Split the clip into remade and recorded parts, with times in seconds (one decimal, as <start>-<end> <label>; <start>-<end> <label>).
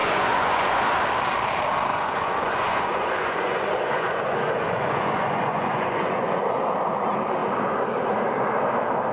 0.0-0.8 remade; 0.8-1.9 recorded; 1.9-6.4 remade; 6.4-9.1 recorded